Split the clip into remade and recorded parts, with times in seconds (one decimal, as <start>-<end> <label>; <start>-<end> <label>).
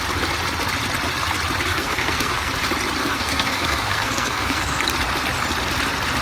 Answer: 0.0-1.7 recorded; 1.7-2.5 remade; 2.5-3.0 recorded; 3.0-4.8 remade; 4.8-6.2 recorded